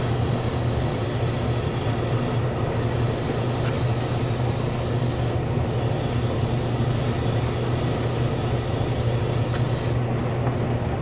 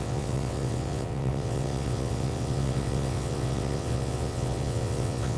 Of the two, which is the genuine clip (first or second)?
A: first